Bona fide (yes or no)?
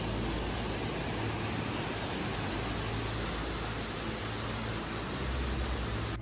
yes